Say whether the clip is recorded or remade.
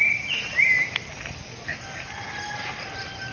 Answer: recorded